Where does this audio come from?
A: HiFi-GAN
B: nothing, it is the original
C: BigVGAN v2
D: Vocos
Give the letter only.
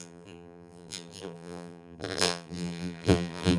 C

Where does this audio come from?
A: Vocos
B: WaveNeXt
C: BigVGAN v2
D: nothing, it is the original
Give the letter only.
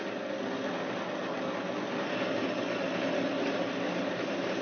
D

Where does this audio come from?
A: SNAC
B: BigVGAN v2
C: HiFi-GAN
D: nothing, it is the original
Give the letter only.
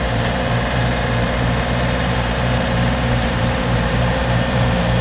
B